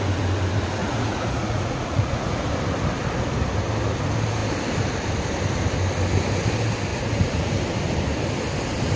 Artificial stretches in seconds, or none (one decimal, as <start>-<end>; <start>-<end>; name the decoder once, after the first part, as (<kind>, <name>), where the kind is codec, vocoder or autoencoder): 0.8-2.4 (vocoder, Vocos); 6.9-7.5